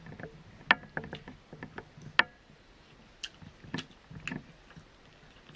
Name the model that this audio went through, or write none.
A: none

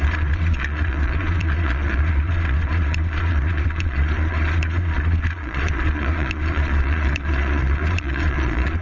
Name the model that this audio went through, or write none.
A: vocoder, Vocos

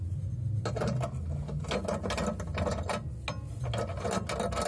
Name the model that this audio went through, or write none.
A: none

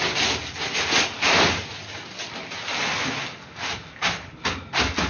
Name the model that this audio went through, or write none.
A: none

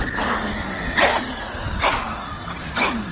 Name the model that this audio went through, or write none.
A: none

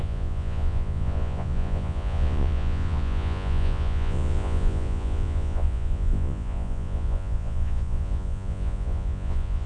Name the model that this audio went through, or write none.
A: vocoder, Vocos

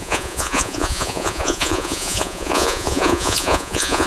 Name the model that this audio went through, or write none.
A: vocoder, Vocos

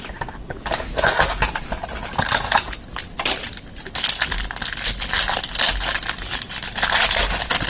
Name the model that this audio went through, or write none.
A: none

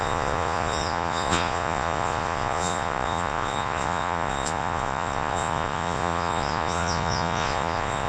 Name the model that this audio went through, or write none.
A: vocoder, Vocos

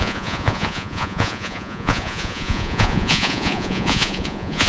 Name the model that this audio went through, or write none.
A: vocoder, Vocos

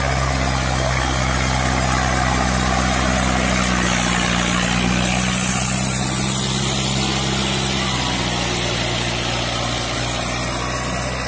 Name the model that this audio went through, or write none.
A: none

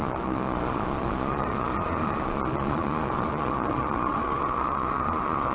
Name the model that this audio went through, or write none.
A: vocoder, Vocos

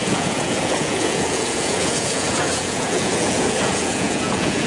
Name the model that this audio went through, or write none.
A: vocoder, Vocos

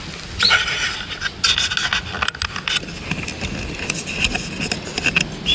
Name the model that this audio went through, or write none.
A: none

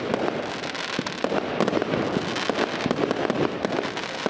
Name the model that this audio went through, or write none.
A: none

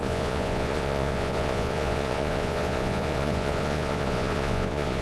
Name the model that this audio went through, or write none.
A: vocoder, Vocos